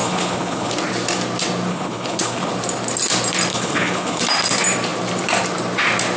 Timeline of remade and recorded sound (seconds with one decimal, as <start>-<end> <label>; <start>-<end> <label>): 0.0-0.7 remade; 0.7-1.7 recorded; 1.7-2.5 remade; 2.5-3.5 recorded; 3.5-4.2 remade; 4.2-6.2 recorded